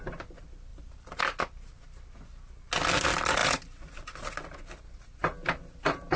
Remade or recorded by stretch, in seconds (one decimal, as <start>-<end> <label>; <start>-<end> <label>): 0.0-0.7 recorded; 0.7-1.2 remade; 1.2-3.4 recorded; 3.4-4.3 remade; 4.3-5.2 recorded; 5.2-6.2 remade